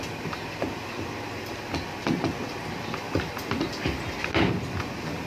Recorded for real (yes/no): yes